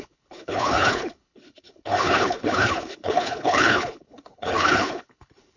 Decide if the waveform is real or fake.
fake